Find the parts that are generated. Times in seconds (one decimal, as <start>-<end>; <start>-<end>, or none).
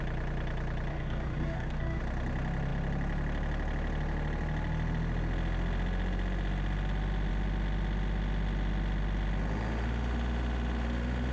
0.9-2.0